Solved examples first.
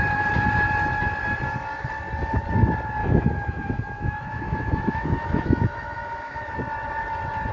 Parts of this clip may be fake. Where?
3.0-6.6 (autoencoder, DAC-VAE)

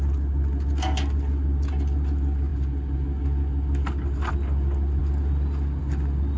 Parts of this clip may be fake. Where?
none

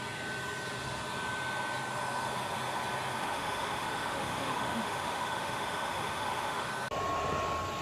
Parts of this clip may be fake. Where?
3.2-6.7 (autoencoder, DAC-VAE)

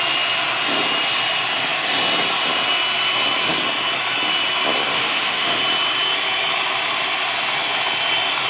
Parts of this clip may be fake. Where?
4.9-5.6 (autoencoder, DAC-VAE)

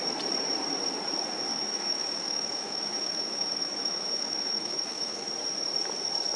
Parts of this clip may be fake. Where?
1.5-5.3 (autoencoder, DAC-VAE)

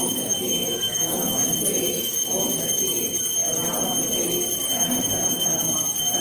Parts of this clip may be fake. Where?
0.0-2.1 (autoencoder, DAC-VAE)

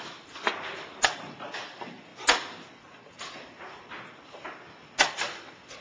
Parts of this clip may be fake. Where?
none

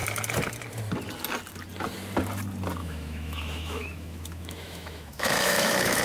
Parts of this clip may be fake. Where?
2.8-6.0 (autoencoder, DAC-VAE)